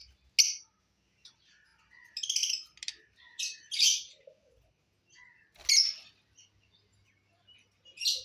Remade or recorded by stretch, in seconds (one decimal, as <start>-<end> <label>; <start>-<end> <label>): 0.0-8.2 recorded